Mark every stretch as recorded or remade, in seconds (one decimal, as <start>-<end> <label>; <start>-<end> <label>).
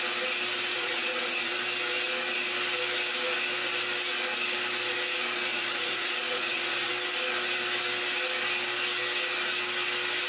0.0-0.7 recorded; 0.7-1.5 remade; 1.5-5.5 recorded; 5.5-6.9 remade; 6.9-10.3 recorded